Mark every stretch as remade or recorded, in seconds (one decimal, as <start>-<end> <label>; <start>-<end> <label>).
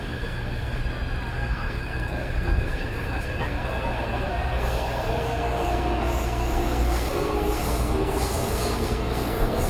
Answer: 0.0-0.8 remade; 0.8-1.3 recorded; 1.3-9.7 remade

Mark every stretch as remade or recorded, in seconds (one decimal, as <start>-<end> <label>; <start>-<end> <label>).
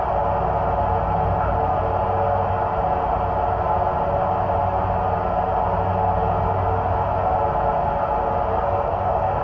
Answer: 0.0-8.5 recorded; 8.5-9.4 remade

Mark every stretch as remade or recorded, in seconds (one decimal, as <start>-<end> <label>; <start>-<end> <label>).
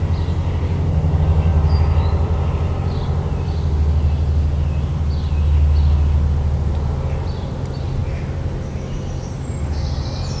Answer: 0.0-10.4 recorded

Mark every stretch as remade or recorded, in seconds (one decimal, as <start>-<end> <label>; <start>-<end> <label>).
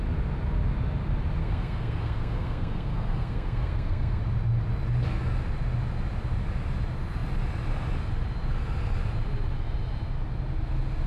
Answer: 0.0-1.4 recorded; 1.4-4.2 remade; 4.2-11.1 recorded